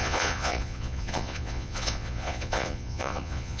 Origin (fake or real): fake